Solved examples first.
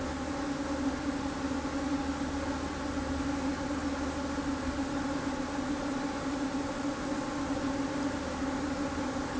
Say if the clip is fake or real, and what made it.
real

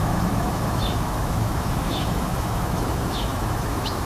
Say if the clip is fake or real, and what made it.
fake, autoencoder, DAC-VAE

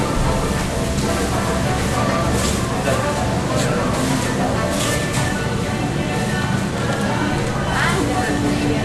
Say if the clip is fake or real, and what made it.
real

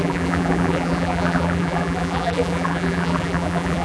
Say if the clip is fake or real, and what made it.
fake, vocoder, BigVGAN v2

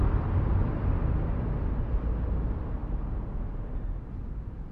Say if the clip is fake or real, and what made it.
real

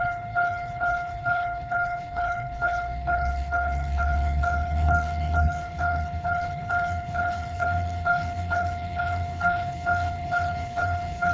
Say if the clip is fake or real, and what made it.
fake, codec, HILCodec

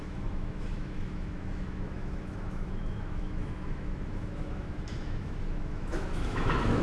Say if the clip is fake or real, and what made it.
fake, autoencoder, DAC-VAE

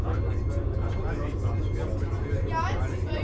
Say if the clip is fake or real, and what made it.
real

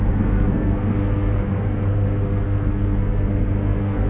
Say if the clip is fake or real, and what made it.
fake, codec, SNAC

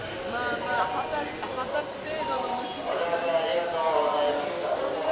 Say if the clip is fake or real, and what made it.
real